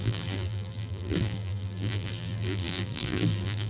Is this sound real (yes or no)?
no